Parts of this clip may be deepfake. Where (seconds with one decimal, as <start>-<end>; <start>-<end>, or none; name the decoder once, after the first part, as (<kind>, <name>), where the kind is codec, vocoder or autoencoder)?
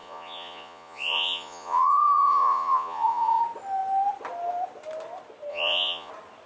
0.0-3.4 (vocoder, Vocos); 5.5-6.1